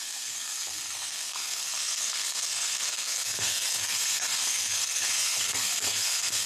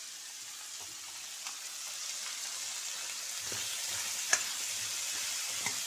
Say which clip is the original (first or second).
second